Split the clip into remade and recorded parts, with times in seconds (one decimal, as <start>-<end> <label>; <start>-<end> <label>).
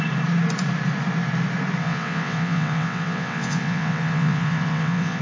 0.0-1.8 recorded; 1.8-5.2 remade